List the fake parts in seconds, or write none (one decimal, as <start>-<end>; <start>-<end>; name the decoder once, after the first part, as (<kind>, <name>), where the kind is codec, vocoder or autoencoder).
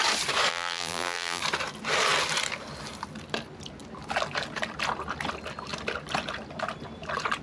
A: 0.5-1.4 (vocoder, BigVGAN v2)